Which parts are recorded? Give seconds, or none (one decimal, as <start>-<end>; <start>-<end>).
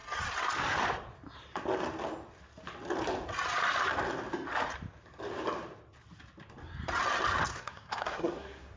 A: 0.0-7.5